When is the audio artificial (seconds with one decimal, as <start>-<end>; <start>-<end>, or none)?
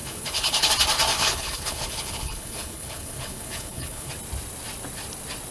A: 0.0-0.7; 1.2-4.1